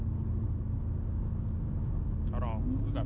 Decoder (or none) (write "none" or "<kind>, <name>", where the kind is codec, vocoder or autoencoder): none